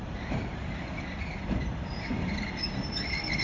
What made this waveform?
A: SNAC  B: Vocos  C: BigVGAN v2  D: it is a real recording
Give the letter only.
D